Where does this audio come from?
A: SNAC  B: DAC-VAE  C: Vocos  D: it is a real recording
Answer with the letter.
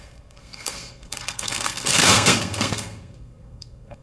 A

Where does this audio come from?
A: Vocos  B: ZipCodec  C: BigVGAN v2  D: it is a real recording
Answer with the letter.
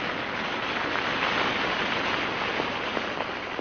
D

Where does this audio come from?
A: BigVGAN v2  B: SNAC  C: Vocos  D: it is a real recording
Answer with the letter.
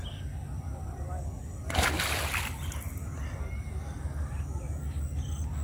D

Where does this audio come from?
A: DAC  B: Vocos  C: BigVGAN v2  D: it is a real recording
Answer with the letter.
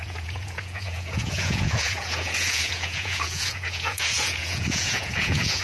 B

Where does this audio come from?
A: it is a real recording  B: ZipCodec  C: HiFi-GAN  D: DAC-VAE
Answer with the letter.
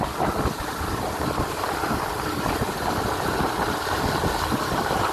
A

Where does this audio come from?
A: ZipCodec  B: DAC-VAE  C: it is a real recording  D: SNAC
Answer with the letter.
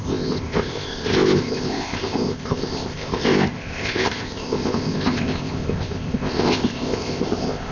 A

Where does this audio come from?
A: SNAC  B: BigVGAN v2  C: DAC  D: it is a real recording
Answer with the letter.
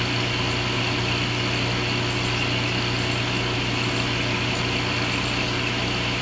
D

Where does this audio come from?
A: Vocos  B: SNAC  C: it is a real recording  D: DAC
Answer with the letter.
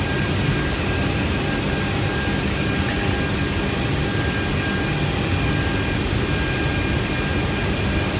C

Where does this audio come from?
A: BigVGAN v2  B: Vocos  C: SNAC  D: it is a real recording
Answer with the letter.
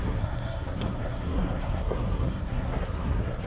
C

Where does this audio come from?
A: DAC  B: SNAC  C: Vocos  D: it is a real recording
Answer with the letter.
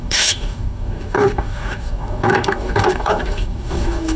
A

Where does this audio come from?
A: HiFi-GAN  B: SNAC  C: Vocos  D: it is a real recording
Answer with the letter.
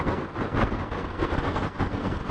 B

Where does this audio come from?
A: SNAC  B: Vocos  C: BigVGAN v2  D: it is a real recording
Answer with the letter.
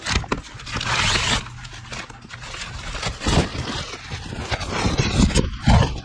D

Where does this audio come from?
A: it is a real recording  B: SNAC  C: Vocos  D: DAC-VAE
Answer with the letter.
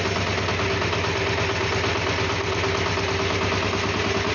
A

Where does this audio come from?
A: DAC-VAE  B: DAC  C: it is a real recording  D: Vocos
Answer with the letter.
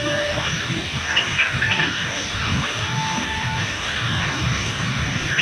B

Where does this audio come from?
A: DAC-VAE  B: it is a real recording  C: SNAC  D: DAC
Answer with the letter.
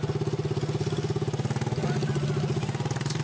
B